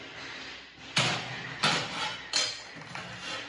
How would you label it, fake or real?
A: real